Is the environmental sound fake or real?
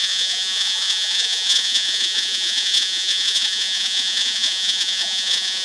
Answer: fake